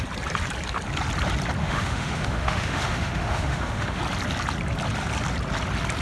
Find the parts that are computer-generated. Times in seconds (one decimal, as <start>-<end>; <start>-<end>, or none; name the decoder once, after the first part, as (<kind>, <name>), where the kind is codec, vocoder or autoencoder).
1.6-4.0 (autoencoder, DAC-VAE)

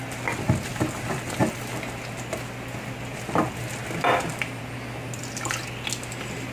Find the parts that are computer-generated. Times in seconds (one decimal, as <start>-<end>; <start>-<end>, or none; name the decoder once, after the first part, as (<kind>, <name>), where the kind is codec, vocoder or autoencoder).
none

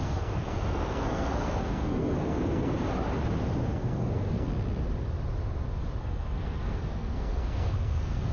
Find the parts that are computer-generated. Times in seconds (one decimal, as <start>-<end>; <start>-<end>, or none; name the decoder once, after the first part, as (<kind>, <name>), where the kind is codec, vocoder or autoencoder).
0.0-2.7 (codec, SNAC); 3.7-4.5; 6.0-8.3

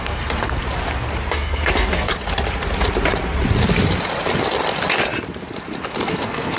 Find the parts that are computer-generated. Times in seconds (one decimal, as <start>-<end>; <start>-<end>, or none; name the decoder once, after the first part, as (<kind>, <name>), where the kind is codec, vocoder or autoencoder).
0.0-0.6 (codec, SNAC); 1.3-2.1; 6.1-6.6

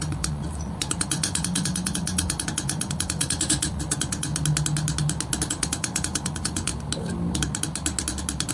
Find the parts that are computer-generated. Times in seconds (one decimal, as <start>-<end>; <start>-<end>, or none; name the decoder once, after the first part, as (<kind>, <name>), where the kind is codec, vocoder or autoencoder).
0.0-4.3 (vocoder, Vocos); 5.5-6.7

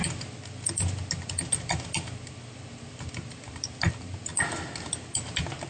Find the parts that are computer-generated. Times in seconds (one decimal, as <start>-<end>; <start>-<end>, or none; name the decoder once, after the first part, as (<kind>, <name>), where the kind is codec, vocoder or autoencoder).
none

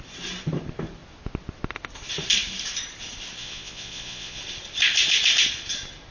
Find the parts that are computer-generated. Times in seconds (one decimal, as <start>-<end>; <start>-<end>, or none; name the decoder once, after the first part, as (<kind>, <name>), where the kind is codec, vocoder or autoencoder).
3.4-4.4 (vocoder, Vocos)